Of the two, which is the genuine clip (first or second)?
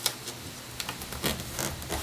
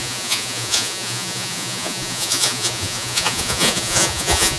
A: first